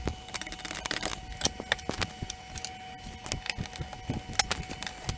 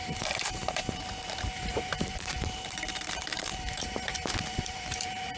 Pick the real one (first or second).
first